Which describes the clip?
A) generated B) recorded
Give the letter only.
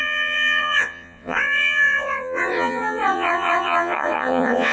A